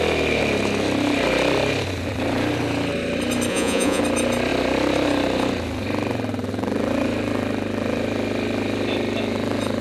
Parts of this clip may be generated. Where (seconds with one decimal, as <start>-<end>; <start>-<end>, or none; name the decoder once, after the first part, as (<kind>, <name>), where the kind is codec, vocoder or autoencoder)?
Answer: 3.5-4.0 (vocoder, Vocos)